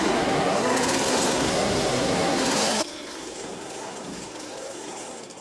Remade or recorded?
remade